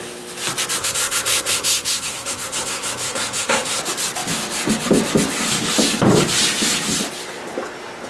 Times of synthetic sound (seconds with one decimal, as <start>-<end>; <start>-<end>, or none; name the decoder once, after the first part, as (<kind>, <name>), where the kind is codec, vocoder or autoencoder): 0.8-3.8 (codec, SNAC)